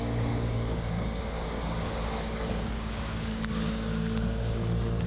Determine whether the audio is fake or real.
fake